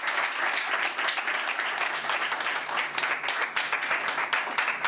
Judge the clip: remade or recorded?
recorded